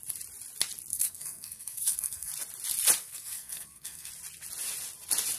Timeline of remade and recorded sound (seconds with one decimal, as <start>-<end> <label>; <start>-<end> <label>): 0.0-0.9 recorded; 0.9-2.3 remade; 2.3-3.0 recorded; 3.0-4.1 remade; 4.1-5.4 recorded

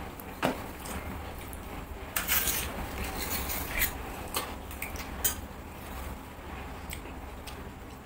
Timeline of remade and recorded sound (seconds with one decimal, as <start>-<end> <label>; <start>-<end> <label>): 0.0-8.1 recorded